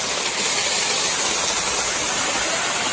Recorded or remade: recorded